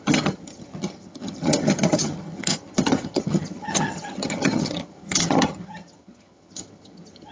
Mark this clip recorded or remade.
remade